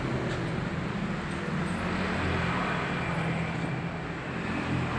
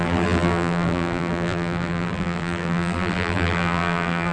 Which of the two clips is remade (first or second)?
second